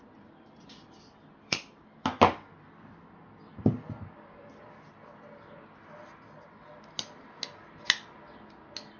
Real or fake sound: real